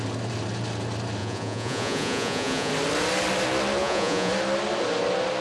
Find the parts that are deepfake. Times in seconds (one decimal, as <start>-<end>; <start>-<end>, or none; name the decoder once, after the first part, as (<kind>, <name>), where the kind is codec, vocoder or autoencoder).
1.2-2.7 (vocoder, Vocos); 3.8-4.3